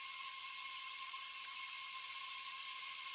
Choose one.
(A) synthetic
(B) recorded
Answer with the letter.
A